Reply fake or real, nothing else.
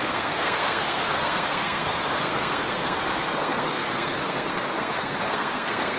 fake